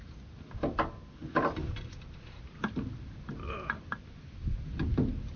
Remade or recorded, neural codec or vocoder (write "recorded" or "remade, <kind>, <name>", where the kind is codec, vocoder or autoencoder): recorded